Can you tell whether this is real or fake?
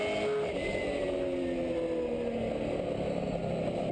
real